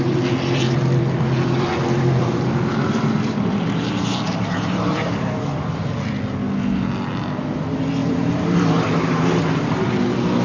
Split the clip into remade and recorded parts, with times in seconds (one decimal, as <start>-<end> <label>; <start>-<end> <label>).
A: 0.0-2.2 recorded; 2.2-5.1 remade; 5.1-8.0 recorded; 8.0-9.4 remade; 9.4-10.4 recorded